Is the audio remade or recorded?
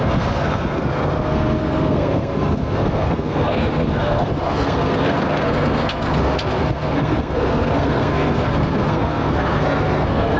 remade